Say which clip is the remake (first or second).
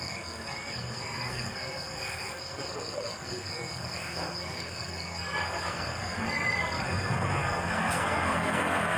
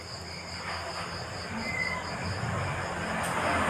first